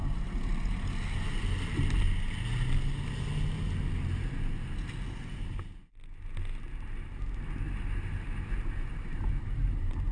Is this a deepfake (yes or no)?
no